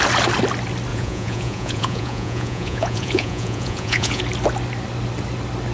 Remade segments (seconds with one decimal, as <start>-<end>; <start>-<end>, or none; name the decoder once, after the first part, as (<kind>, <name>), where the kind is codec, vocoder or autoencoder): 0.9-4.2 (vocoder, Vocos)